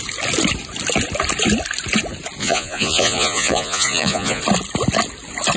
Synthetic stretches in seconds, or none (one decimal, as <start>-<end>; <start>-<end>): 2.4-4.4